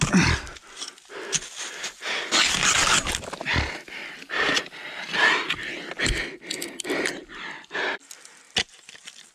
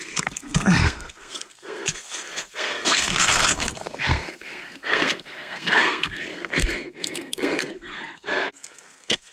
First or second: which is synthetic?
second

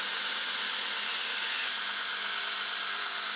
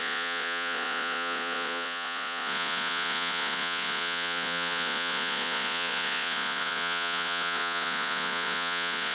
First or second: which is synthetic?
second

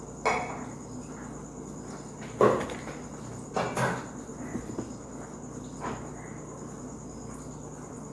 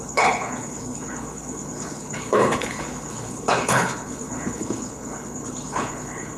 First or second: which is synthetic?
second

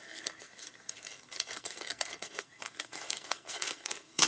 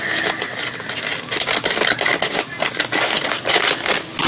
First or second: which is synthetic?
first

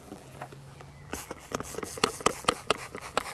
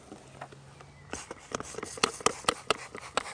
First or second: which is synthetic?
first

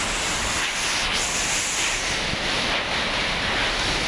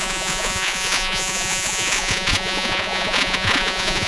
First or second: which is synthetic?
second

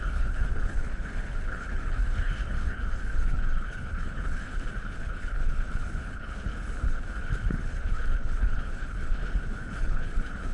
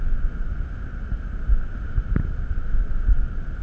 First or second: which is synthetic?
first